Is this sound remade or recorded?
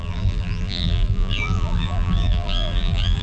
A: remade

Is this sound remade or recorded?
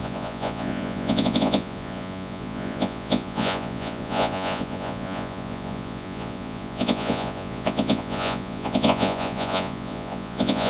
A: remade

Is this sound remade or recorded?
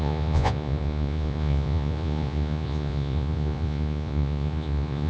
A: remade